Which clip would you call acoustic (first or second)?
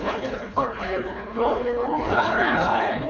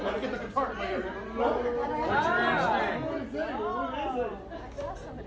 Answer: second